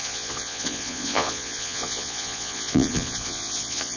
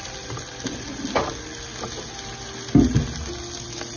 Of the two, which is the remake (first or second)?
first